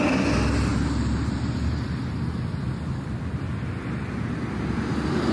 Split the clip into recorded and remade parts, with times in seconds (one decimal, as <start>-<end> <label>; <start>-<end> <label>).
0.0-5.3 recorded